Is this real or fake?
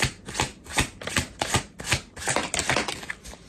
real